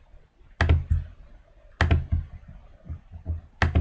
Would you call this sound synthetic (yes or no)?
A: no